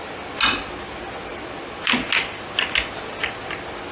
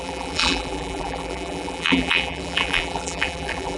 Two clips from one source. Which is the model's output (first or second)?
second